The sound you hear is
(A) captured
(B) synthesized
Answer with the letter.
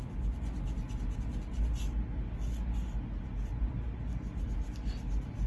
A